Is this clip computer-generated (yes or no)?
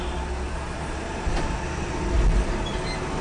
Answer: no